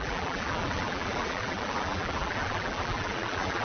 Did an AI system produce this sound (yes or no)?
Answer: yes